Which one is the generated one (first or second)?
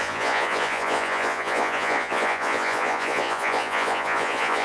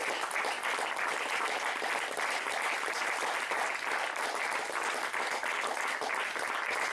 first